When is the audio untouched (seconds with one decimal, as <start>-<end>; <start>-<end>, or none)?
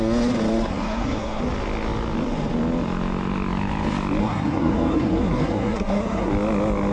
0.0-0.7; 1.4-4.2; 6.3-6.9